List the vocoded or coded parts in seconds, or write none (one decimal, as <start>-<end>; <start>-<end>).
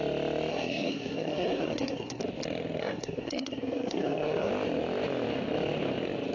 0.5-2.2; 2.8-4.5